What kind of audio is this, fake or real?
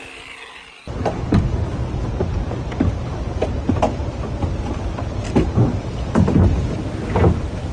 real